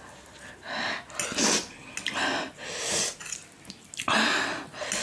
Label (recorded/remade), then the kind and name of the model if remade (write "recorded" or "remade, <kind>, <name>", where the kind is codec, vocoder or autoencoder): recorded